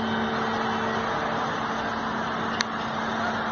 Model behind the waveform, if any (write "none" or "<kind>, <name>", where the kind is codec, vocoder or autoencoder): none